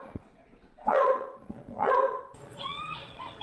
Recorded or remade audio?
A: remade